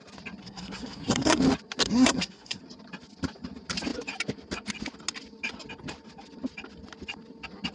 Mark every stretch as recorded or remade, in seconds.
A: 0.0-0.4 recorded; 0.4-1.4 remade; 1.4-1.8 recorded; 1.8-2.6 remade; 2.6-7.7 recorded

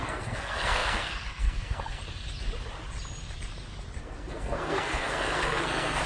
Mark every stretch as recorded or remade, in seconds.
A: 0.0-2.0 remade; 2.0-4.0 recorded; 4.0-6.1 remade

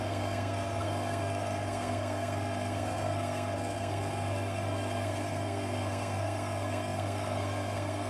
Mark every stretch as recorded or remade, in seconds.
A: 0.0-8.1 remade

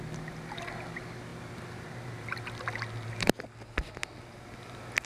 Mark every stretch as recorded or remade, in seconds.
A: 0.0-5.0 recorded

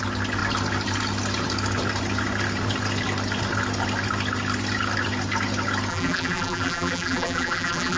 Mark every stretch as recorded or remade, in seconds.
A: 0.0-5.9 recorded; 5.9-8.0 remade

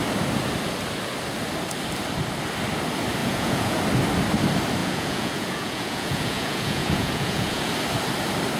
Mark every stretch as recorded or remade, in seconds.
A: 0.0-3.2 recorded; 3.2-3.8 remade; 3.8-4.8 recorded; 4.8-7.7 remade; 7.7-8.6 recorded

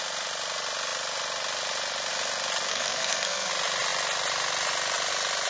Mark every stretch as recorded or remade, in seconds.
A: 0.0-2.7 recorded; 2.7-3.5 remade; 3.5-5.5 recorded

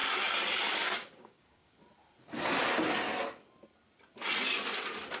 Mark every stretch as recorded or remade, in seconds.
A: 0.0-0.7 recorded; 0.7-1.8 remade; 1.8-5.2 recorded